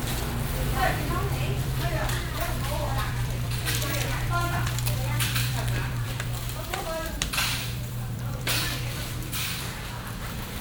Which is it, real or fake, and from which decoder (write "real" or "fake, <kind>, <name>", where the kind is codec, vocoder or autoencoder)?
fake, vocoder, BigVGAN v2